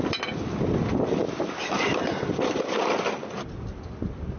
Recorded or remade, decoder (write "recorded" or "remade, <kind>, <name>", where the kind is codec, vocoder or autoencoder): recorded